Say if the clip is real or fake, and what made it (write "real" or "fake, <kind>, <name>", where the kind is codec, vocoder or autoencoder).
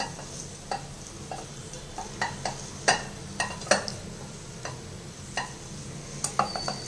real